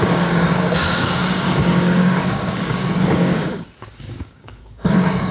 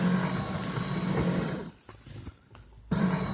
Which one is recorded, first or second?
second